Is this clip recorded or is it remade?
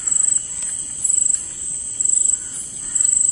recorded